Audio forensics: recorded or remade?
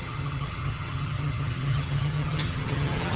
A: remade